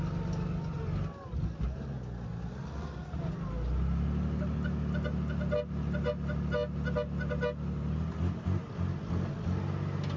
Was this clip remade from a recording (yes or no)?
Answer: no